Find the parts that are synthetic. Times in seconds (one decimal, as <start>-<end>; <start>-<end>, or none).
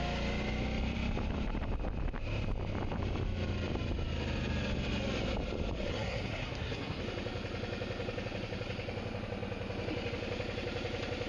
5.9-7.0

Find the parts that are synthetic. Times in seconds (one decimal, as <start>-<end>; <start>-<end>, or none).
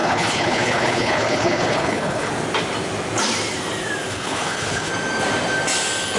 0.0-2.3; 4.1-4.9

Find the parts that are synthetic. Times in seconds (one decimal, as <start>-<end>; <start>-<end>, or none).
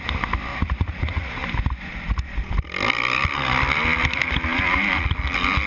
0.5-1.3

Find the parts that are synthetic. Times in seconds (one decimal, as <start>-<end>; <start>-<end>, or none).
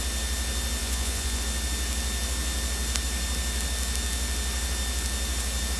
0.8-1.4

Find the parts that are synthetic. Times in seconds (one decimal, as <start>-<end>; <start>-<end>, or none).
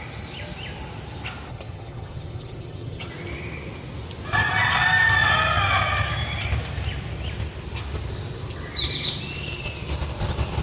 1.5-3.1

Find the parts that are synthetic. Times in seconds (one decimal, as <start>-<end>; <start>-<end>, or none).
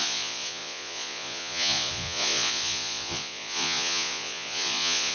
0.0-5.1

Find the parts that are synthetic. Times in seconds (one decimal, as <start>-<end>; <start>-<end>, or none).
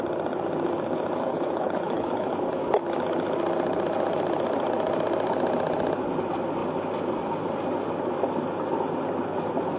1.2-2.3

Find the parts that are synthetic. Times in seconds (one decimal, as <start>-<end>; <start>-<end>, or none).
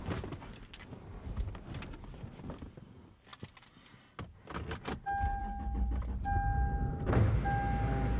none